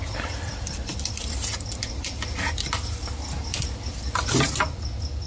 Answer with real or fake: real